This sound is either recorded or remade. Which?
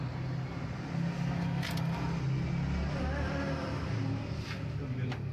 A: recorded